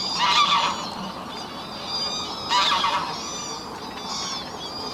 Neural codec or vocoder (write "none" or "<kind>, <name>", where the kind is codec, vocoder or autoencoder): none